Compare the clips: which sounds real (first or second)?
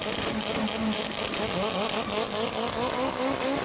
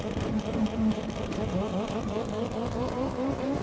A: first